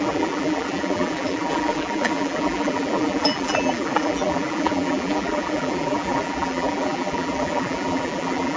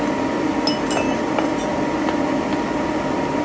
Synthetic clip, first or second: first